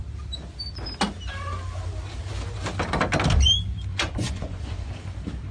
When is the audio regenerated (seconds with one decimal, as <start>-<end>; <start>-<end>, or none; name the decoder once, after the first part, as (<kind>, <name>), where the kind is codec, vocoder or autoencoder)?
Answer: 3.9-4.9 (vocoder, Vocos)